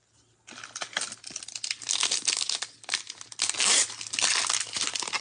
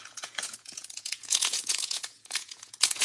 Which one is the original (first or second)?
first